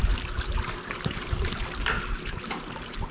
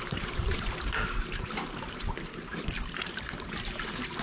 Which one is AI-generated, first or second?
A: second